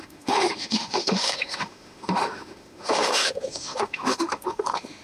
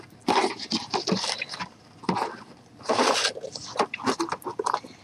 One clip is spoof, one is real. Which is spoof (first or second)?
first